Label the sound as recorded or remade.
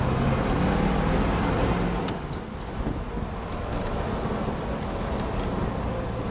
recorded